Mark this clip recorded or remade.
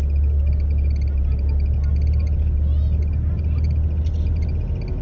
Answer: recorded